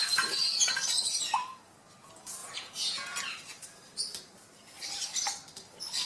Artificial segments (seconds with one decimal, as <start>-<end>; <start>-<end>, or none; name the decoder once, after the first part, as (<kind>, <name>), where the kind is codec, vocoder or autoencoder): 2.4-3.2 (vocoder, Vocos)